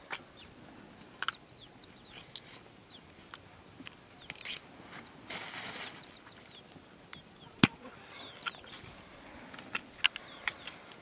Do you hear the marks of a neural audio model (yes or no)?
no